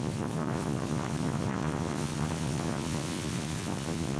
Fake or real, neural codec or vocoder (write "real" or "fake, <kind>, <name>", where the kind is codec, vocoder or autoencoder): fake, vocoder, Vocos